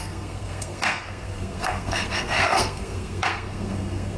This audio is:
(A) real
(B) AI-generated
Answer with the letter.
B